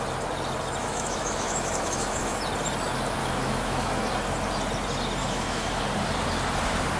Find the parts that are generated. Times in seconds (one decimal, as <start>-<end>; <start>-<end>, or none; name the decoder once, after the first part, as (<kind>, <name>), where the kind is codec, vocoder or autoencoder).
0.8-2.4 (autoencoder, DAC-VAE); 3.2-4.0; 5.2-5.8